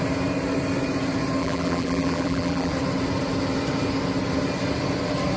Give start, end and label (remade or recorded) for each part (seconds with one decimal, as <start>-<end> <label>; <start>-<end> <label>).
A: 0.0-1.4 recorded; 1.4-2.7 remade; 2.7-5.4 recorded